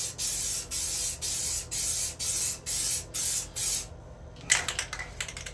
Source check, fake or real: real